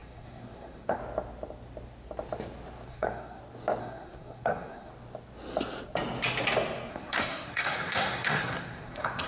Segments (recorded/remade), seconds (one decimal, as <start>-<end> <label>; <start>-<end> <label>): 0.0-1.0 remade; 1.0-2.9 recorded; 2.9-3.4 remade; 3.4-3.8 recorded; 3.8-4.9 remade; 4.9-6.9 recorded; 6.9-9.3 remade